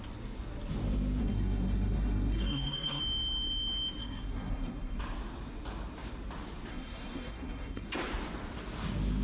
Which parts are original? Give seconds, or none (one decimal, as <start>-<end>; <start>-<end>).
0.0-1.2; 3.0-4.0; 5.0-6.7; 7.9-9.2